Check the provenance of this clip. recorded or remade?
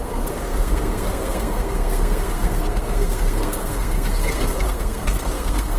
remade